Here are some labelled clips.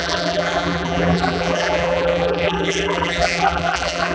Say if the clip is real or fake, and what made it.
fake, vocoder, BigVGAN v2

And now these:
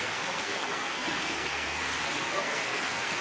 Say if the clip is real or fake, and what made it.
fake, codec, SNAC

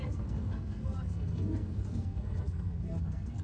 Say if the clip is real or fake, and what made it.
fake, codec, SNAC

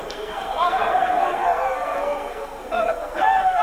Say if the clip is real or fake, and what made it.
fake, codec, SNAC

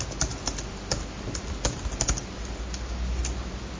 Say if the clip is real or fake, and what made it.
real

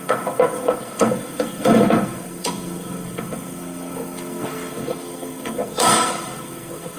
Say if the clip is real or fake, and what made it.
fake, codec, SNAC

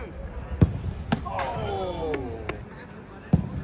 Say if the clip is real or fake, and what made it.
real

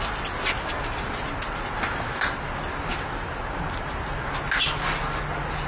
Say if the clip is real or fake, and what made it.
real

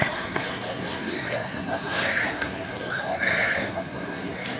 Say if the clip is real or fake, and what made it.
fake, codec, SNAC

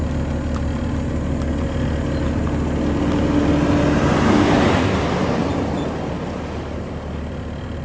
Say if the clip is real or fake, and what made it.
real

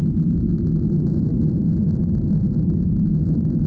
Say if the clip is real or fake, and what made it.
real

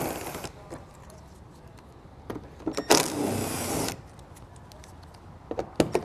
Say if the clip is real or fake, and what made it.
real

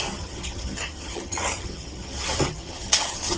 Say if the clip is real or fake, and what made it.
fake, vocoder, HiFi-GAN